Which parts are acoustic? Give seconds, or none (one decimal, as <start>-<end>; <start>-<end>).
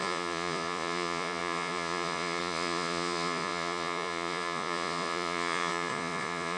none